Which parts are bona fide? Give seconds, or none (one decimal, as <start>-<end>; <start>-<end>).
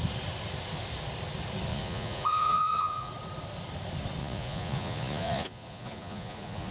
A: 0.0-1.7; 3.1-4.2